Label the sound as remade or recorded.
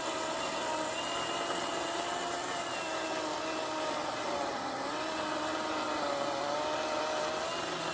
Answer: recorded